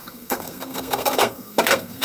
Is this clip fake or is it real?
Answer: fake